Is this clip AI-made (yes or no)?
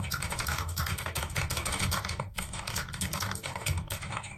yes